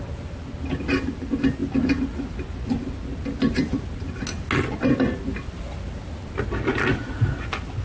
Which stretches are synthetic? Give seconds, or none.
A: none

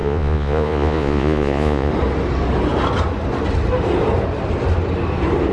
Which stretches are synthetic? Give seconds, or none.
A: 0.0-1.9 (vocoder, Vocos)